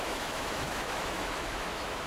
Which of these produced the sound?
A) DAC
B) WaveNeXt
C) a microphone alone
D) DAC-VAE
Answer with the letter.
D